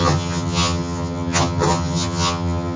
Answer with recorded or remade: remade